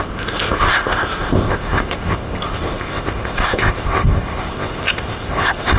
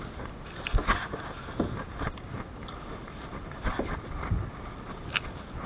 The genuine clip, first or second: second